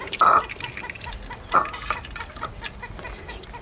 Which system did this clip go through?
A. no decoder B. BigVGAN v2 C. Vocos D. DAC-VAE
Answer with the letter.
B